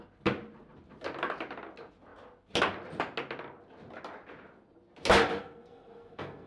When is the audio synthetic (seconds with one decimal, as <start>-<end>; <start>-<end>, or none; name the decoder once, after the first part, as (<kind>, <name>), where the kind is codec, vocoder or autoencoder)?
5.4-6.5 (codec, SNAC)

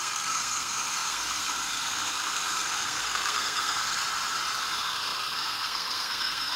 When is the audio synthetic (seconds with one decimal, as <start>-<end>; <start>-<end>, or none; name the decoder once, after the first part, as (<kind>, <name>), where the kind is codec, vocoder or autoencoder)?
0.0-4.0 (codec, SNAC); 4.6-6.6

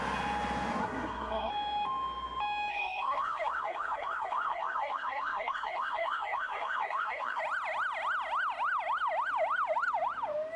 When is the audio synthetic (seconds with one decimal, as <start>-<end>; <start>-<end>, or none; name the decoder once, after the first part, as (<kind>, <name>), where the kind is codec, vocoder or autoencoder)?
0.8-1.5 (codec, SNAC); 2.7-7.4

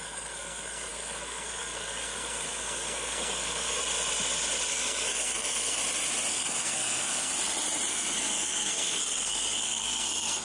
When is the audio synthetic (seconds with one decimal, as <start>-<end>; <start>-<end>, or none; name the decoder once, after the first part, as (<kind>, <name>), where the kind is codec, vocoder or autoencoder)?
0.0-3.8 (codec, SNAC); 4.7-5.8; 6.3-7.3; 7.9-10.4